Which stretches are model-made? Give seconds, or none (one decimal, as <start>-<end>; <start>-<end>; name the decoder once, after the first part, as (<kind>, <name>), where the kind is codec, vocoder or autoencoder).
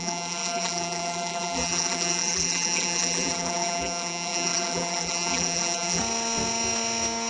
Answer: 0.0-6.0 (vocoder, BigVGAN v2)